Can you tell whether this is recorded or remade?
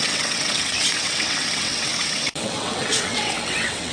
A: remade